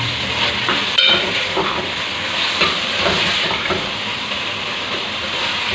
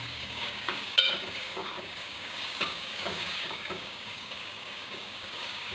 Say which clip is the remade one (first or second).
second